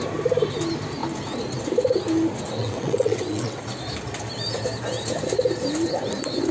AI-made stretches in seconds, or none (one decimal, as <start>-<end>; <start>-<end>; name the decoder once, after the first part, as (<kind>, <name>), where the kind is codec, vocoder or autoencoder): 2.6-3.6 (vocoder, WaveNeXt)